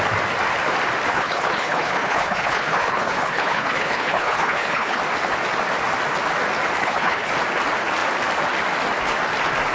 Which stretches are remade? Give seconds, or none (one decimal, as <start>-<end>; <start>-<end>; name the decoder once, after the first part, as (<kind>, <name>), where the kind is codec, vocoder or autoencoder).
1.1-5.0 (codec, HILCodec); 6.8-7.3